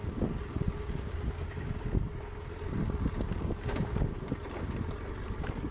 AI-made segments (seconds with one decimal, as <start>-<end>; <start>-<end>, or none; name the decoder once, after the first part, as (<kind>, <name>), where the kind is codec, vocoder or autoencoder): 0.0-2.1 (codec, DAC); 2.8-4.3